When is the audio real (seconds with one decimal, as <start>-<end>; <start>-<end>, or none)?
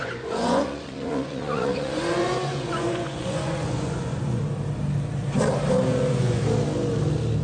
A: 4.4-5.9; 6.4-7.4